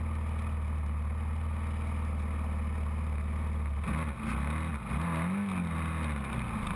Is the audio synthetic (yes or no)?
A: no